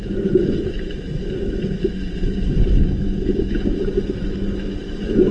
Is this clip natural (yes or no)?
no